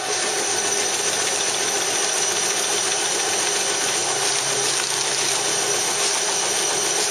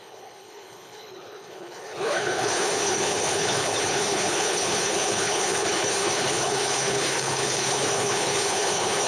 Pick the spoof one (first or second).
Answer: second